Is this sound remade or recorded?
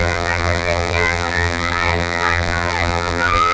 remade